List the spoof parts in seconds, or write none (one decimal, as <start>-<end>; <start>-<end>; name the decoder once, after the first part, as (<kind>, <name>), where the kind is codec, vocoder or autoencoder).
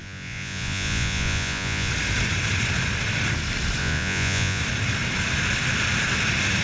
0.0-1.9 (vocoder, Vocos); 3.8-4.6